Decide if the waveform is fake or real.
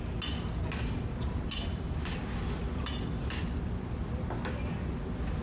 real